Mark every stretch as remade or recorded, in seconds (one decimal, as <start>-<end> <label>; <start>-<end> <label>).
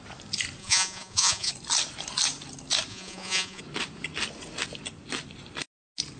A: 0.0-0.6 recorded; 0.6-1.5 remade; 1.5-2.9 recorded; 2.9-3.6 remade; 3.6-6.2 recorded